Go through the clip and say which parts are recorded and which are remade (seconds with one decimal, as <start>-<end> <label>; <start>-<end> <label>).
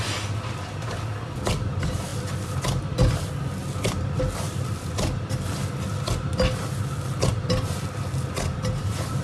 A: 0.0-9.2 recorded